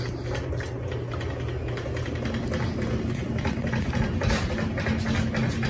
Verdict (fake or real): real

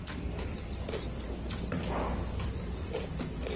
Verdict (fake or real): real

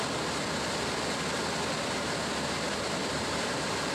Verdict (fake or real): real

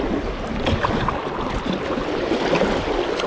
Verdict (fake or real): real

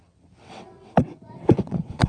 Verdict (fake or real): fake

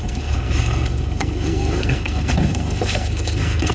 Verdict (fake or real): fake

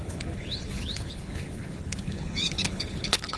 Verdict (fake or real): fake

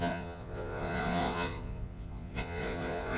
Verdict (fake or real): fake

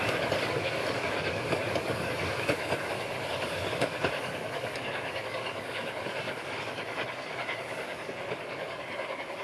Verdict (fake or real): fake